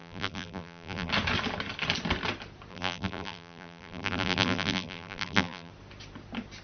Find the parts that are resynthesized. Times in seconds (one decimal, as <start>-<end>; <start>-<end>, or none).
0.0-1.1; 2.7-5.7